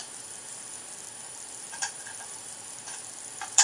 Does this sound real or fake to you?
fake